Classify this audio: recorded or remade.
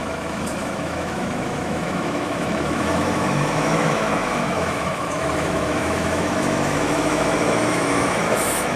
remade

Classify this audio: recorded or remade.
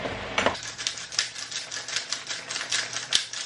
recorded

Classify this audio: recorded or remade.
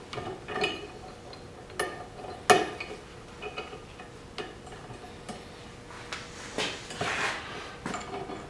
recorded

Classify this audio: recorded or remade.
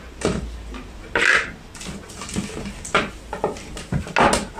recorded